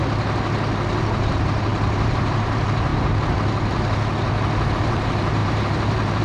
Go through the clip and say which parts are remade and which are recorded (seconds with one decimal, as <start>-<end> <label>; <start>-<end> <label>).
0.0-1.0 recorded; 1.0-2.9 remade; 2.9-4.7 recorded; 4.7-6.2 remade